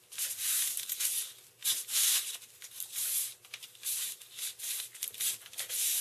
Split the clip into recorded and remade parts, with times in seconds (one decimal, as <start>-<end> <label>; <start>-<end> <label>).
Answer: 0.0-0.4 recorded; 0.4-1.0 remade; 1.0-1.6 recorded; 1.6-4.7 remade; 4.7-6.0 recorded